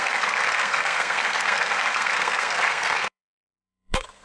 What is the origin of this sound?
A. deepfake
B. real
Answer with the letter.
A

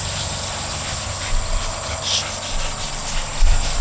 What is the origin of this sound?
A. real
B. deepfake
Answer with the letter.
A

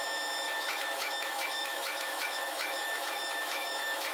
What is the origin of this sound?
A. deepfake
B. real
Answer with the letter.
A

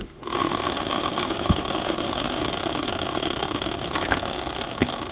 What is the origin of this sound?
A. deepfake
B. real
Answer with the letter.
A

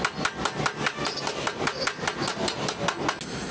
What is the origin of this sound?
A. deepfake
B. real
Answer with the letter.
B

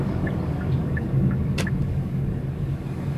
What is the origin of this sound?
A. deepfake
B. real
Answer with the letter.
A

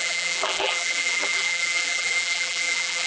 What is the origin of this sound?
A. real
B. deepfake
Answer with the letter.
B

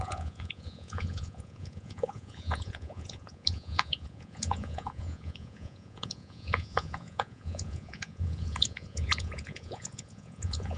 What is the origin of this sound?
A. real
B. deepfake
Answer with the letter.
B